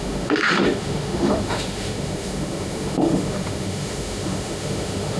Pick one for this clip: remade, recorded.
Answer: remade